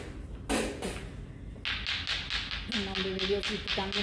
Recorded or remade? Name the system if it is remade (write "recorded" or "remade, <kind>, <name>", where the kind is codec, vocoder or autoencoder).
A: recorded